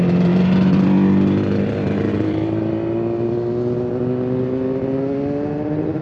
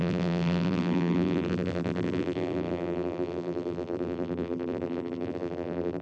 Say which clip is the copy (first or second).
second